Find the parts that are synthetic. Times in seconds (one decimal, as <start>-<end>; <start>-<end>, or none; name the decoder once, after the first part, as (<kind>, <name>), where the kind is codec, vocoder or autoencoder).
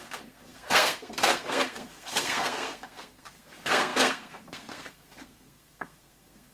0.0-6.5 (codec, SNAC)